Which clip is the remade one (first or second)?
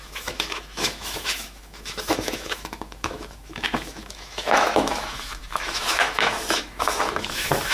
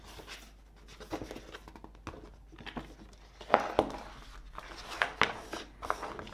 first